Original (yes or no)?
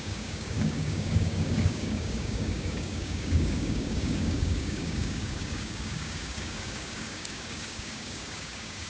no